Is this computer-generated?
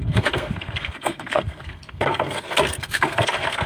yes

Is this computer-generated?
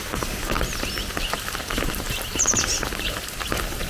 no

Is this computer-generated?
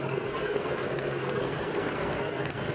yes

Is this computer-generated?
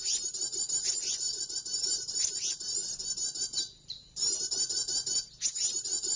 no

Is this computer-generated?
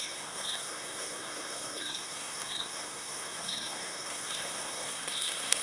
yes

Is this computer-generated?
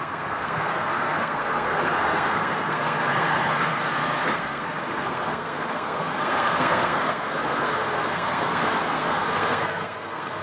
yes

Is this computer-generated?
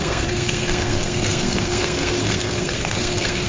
yes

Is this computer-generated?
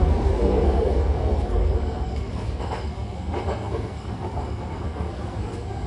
yes